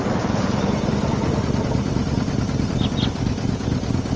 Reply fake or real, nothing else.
real